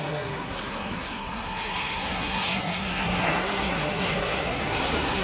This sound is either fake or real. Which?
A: fake